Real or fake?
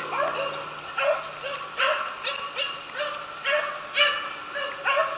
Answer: real